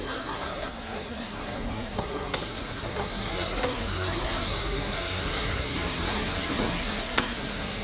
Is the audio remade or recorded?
remade